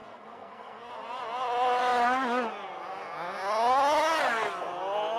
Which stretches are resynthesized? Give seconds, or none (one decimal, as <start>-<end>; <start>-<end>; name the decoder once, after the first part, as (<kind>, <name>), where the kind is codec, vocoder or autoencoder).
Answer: 0.0-0.9 (codec, SNAC)